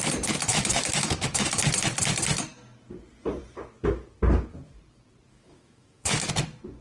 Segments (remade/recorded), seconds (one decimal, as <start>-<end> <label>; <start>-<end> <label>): 0.0-0.5 recorded; 0.5-1.6 remade; 1.6-5.3 recorded; 5.3-6.3 remade; 6.3-6.8 recorded